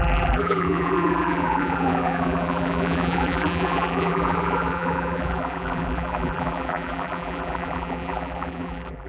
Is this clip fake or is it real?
fake